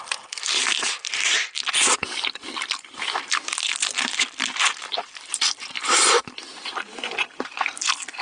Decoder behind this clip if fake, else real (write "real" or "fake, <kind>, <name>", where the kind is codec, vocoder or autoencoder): fake, vocoder, BigVGAN v2